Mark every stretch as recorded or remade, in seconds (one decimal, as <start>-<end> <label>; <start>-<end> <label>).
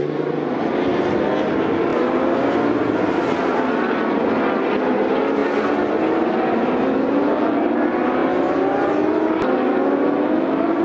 0.0-10.8 recorded